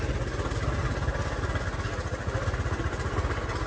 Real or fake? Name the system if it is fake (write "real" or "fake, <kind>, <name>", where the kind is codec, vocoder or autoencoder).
real